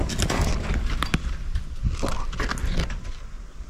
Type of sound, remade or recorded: recorded